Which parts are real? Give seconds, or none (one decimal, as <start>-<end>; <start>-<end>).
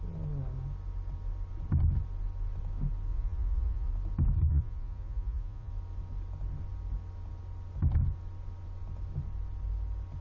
0.0-3.1; 3.9-4.5; 5.7-10.2